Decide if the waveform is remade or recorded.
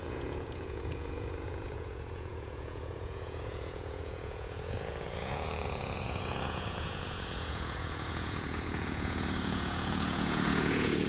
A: remade